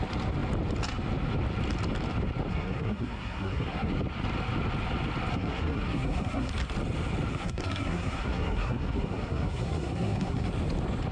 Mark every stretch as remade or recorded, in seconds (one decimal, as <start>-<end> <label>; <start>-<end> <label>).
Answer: 0.0-2.5 recorded; 2.5-3.9 remade; 3.9-5.3 recorded; 5.3-6.5 remade; 6.5-7.3 recorded; 7.3-10.5 remade; 10.5-11.1 recorded